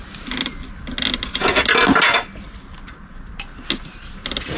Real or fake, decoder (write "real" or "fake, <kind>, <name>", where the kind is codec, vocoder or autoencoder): real